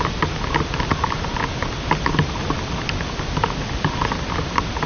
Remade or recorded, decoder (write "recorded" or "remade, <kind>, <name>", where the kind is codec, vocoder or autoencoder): recorded